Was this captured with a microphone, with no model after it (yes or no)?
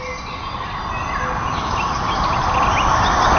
yes